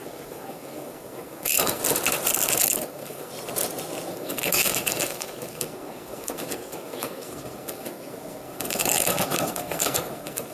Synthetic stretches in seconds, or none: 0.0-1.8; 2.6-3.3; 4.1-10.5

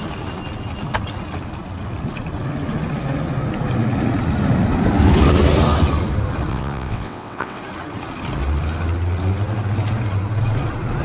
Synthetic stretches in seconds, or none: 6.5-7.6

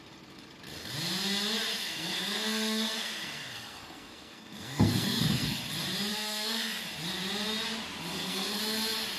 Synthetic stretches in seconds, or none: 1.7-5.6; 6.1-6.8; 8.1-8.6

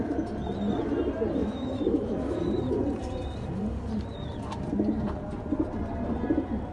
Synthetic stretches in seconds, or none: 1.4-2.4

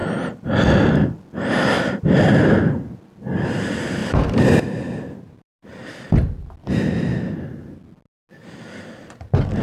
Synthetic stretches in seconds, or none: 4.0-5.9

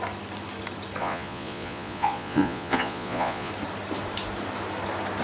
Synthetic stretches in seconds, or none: 1.0-3.5

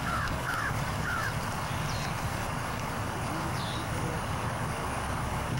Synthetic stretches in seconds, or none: 0.0-1.2; 2.3-5.6

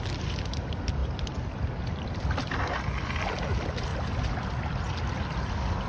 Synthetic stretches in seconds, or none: none